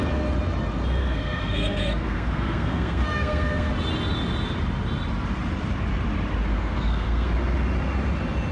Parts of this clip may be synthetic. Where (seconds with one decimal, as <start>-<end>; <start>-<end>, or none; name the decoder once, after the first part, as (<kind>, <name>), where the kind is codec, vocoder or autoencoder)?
1.0-3.7 (codec, SNAC); 6.5-7.3